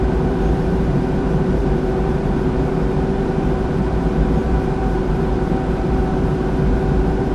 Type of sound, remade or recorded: remade